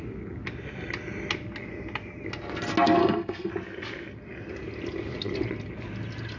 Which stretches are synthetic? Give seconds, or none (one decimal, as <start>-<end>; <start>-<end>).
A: 3.0-3.5